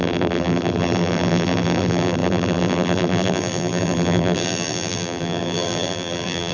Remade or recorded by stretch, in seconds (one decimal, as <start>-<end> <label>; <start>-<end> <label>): 0.0-6.5 remade